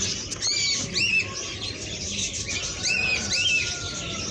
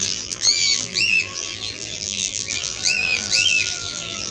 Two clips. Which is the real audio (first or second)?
first